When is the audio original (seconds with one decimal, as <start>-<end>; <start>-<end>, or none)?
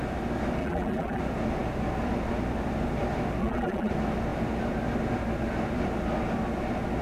0.0-0.6; 1.2-3.4; 3.9-7.0